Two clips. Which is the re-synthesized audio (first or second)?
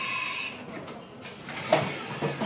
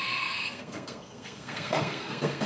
second